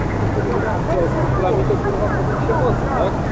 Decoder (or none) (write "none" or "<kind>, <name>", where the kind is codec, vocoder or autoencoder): none